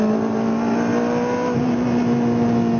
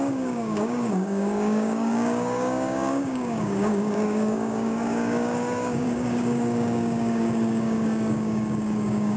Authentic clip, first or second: first